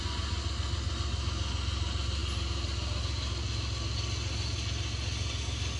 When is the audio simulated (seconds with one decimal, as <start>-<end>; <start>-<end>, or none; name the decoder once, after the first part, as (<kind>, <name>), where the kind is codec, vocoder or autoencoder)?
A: none